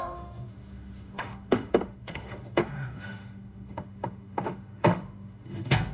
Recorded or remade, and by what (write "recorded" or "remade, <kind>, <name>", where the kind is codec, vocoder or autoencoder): remade, autoencoder, DAC-VAE